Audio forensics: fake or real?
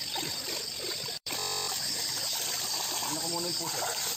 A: fake